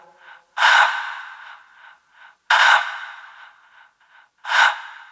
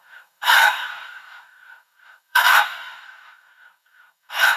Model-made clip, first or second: second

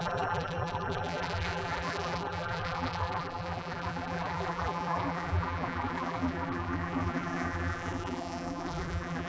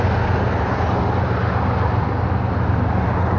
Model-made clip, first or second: first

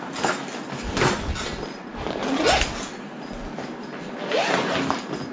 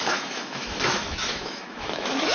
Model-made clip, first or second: second